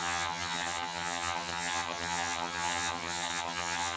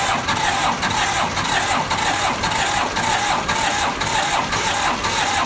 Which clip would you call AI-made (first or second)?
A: first